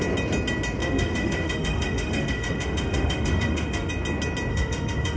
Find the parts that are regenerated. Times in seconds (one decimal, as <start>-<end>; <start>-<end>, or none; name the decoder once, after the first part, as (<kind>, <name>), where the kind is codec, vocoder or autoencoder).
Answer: 0.8-3.9 (autoencoder, DAC-VAE); 4.5-5.2